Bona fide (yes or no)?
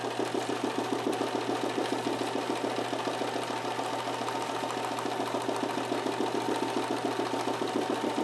yes